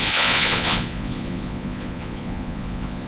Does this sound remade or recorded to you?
remade